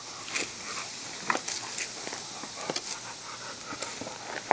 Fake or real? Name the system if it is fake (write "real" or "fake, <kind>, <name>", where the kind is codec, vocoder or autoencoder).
real